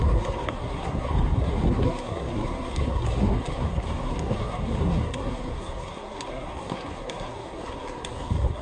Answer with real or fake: fake